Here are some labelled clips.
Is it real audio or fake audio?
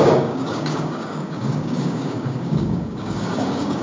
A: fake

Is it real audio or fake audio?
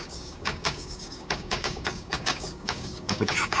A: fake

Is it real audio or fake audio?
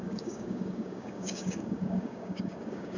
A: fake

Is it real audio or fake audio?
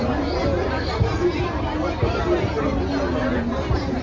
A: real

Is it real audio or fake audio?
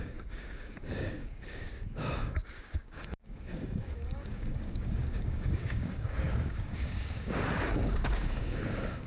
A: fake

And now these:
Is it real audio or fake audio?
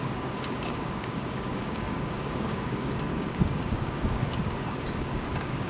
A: fake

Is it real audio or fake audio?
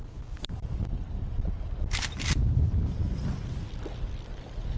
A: real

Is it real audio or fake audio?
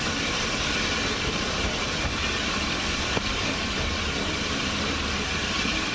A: real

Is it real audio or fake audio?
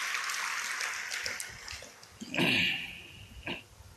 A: real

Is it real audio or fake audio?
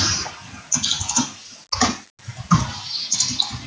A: real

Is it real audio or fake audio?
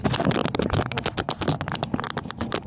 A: real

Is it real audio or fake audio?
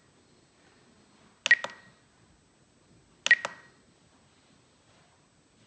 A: real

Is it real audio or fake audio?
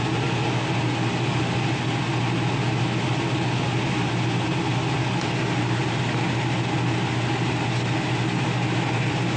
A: real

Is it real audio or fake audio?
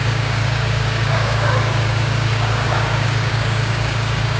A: fake